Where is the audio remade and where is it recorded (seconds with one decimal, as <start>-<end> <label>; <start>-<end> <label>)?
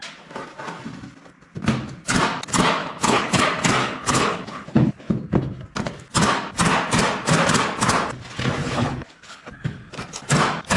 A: 0.0-2.8 recorded; 2.8-3.4 remade; 3.4-3.8 recorded; 3.8-5.1 remade; 5.1-8.6 recorded; 8.6-9.9 remade; 9.9-10.8 recorded